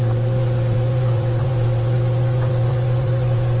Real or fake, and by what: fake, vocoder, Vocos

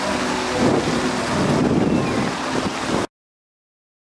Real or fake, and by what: real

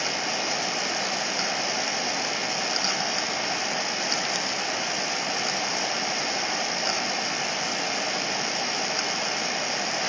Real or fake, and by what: real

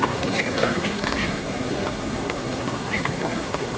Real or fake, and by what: fake, codec, SNAC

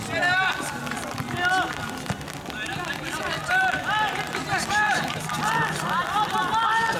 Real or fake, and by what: real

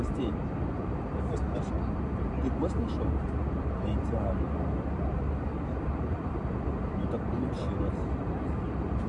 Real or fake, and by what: fake, vocoder, BigVGAN v2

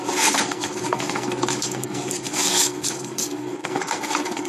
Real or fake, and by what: fake, codec, SNAC